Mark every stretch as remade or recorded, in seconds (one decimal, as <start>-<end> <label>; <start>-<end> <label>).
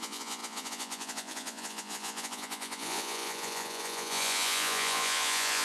0.0-5.6 remade